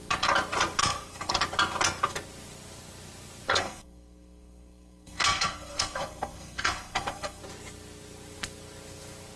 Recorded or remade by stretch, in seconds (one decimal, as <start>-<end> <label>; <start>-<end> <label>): 0.0-0.8 recorded; 0.8-1.3 remade; 1.3-3.5 recorded; 3.5-7.4 remade; 7.4-9.4 recorded